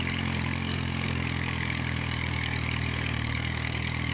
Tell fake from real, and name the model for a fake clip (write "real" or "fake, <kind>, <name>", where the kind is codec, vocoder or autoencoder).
fake, codec, DAC